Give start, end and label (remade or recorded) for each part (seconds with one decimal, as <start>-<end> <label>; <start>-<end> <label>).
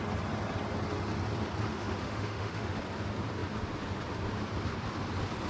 0.0-1.7 recorded; 1.7-2.8 remade; 2.8-5.5 recorded